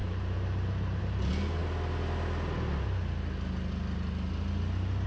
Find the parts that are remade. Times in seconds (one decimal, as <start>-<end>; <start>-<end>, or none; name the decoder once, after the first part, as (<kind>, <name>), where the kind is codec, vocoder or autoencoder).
0.0-1.0 (vocoder, BigVGAN v2)